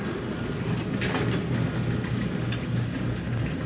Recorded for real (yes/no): yes